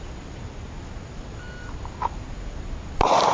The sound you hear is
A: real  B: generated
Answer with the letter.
A